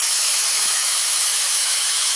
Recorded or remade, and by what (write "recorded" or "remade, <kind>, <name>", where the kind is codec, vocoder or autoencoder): remade, autoencoder, DAC-VAE